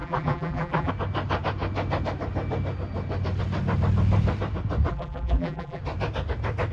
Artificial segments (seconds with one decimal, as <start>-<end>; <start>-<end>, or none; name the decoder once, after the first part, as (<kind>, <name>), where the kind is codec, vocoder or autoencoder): 0.0-0.9 (vocoder, BigVGAN v2); 4.9-5.8